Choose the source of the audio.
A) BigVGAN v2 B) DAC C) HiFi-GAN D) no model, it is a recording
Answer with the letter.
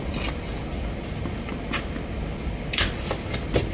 D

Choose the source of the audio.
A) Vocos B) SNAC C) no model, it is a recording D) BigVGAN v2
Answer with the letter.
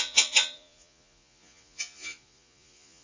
A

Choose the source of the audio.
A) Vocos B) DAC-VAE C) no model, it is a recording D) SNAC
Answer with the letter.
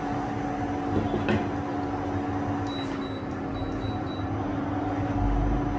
C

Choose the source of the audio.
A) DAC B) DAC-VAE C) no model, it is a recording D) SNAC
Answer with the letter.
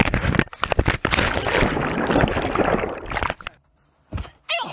C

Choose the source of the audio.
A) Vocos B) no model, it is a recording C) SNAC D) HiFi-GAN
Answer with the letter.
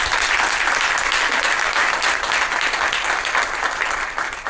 B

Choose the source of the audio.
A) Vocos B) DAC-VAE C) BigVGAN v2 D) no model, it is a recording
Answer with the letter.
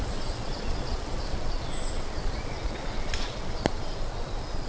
A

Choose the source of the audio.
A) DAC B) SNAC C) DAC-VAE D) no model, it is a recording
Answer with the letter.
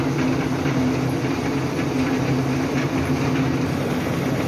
D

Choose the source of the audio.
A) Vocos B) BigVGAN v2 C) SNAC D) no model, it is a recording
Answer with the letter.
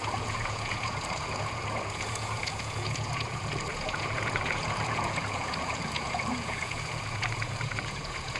A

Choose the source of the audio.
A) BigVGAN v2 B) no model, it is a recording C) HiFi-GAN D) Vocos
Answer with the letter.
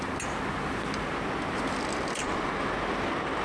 B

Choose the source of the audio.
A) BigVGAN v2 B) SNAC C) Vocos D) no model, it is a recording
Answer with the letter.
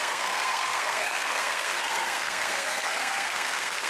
B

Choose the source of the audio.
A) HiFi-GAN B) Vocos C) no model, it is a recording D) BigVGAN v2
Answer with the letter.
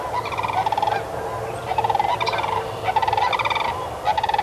C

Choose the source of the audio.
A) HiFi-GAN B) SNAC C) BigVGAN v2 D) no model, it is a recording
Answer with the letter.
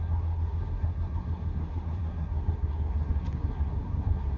B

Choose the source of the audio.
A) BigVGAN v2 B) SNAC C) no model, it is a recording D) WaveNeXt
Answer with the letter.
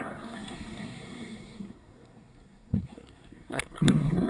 B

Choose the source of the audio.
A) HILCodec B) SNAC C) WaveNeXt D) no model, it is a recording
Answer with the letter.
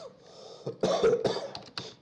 D